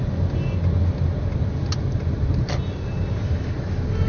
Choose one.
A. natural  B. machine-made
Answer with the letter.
A